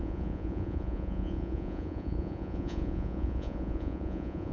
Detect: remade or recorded remade